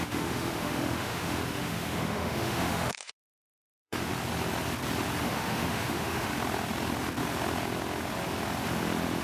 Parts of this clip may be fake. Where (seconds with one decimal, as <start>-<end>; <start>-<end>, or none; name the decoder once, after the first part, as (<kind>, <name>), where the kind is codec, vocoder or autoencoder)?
0.0-4.1 (autoencoder, DAC-VAE); 5.2-6.3